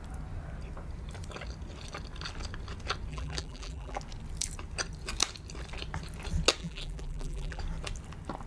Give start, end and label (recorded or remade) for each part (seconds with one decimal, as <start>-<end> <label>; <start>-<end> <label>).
0.0-3.1 recorded; 3.1-4.0 remade; 4.0-6.6 recorded; 6.6-7.6 remade; 7.6-8.5 recorded